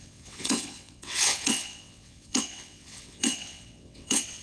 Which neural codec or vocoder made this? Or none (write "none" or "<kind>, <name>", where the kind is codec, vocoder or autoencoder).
vocoder, WaveNeXt